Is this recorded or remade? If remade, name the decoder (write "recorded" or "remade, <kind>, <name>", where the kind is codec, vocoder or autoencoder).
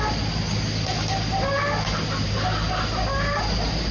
recorded